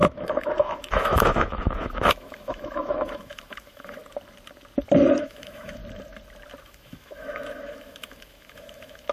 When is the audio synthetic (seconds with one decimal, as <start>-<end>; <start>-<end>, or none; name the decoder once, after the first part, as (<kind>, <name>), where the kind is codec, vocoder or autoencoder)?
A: 0.0-4.0 (autoencoder, DAC-VAE); 5.2-5.8; 6.6-9.1